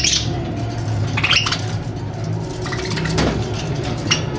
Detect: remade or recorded recorded